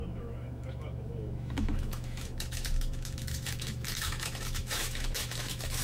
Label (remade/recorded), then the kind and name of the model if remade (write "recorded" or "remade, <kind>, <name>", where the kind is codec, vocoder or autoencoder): remade, autoencoder, DAC-VAE